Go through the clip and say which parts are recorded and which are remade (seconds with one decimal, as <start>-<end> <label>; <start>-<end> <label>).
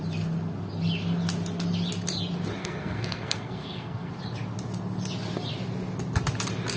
0.0-2.6 recorded; 2.6-4.1 remade; 4.1-6.8 recorded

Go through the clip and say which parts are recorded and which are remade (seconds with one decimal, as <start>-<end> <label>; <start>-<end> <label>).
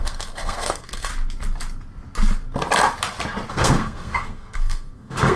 0.0-1.1 remade; 1.1-3.5 recorded; 3.5-5.4 remade